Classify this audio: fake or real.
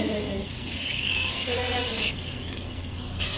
fake